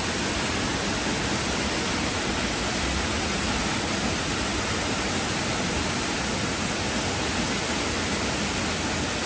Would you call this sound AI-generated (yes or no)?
no